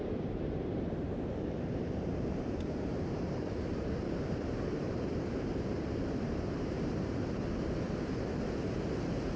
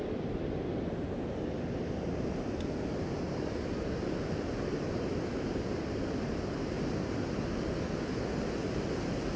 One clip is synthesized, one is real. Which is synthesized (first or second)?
first